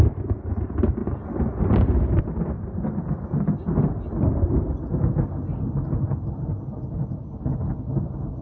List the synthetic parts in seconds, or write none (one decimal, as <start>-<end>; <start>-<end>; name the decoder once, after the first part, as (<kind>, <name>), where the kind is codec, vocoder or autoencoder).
none